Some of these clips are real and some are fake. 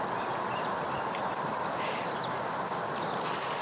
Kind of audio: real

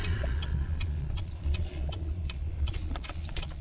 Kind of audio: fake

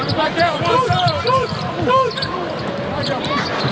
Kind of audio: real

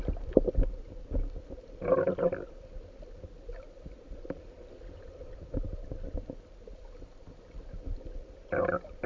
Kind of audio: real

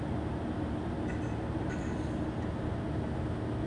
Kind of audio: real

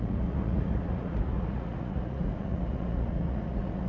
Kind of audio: fake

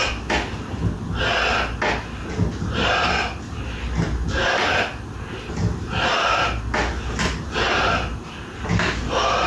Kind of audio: real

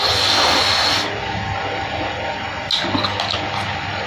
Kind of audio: real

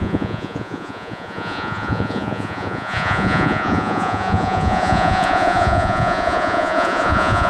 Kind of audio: fake